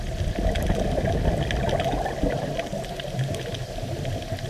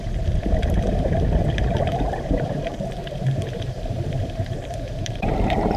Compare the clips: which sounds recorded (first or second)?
first